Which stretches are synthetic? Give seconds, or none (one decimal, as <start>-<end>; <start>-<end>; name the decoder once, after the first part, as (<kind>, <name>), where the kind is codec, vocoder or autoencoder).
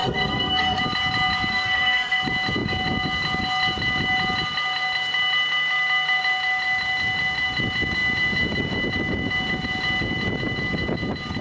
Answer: 0.0-0.8 (codec, SNAC); 1.5-2.2